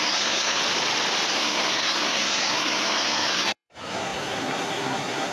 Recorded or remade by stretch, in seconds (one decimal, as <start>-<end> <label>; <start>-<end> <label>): 0.0-0.6 remade; 0.6-1.3 recorded; 1.3-5.3 remade